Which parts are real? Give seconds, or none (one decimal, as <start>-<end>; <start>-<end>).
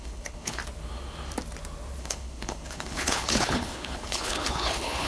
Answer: 0.6-2.0